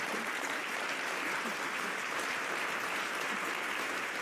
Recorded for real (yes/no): no